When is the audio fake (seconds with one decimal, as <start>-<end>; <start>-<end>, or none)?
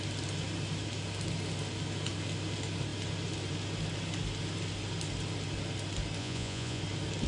6.2-6.8